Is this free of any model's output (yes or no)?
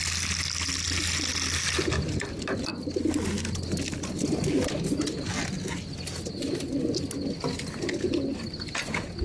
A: yes